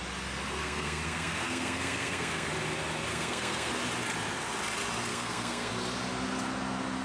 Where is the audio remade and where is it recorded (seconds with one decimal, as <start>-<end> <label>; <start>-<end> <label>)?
0.0-0.6 recorded; 0.6-2.5 remade; 2.5-3.1 recorded; 3.1-3.7 remade; 3.7-5.1 recorded; 5.1-5.7 remade; 5.7-7.0 recorded